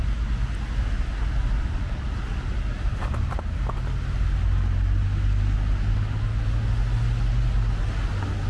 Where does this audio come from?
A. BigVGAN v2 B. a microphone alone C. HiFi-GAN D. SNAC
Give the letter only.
B